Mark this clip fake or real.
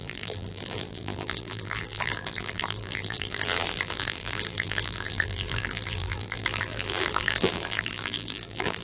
fake